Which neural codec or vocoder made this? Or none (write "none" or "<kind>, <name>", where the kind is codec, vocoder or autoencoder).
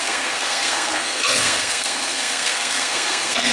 codec, SNAC